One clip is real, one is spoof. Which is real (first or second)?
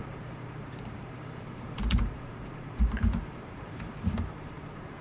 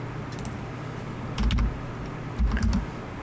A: second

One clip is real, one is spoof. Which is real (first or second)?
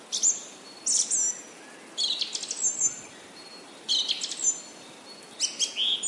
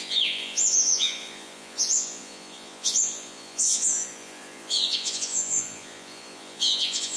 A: first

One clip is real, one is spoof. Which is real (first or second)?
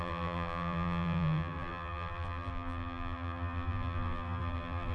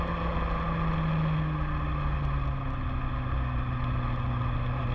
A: second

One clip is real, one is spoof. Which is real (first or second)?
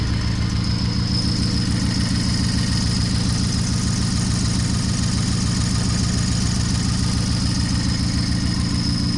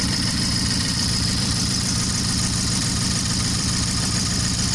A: first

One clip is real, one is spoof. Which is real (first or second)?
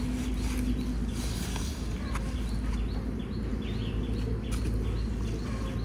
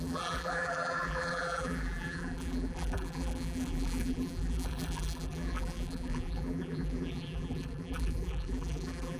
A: first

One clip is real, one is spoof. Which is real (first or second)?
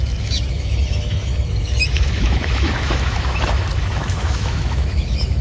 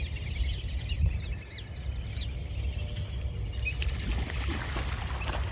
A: second